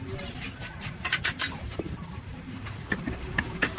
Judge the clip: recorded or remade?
remade